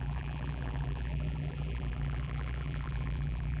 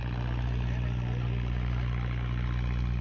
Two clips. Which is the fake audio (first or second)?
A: first